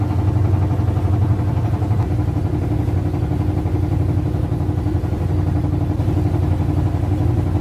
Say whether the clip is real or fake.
real